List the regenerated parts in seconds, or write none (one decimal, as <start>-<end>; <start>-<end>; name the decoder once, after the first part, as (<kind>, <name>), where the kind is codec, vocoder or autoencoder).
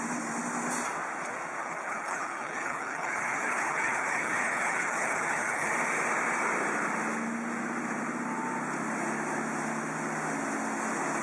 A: 1.6-5.7 (codec, HILCodec)